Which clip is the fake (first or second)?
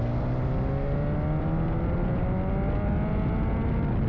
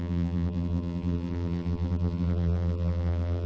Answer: second